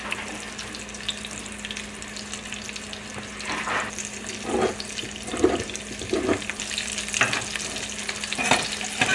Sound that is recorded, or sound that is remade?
recorded